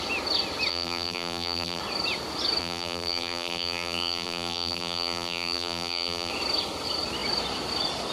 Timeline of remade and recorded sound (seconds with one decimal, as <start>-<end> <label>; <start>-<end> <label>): 0.0-0.7 recorded; 0.7-1.8 remade; 1.8-2.6 recorded; 2.6-6.3 remade; 6.3-8.1 recorded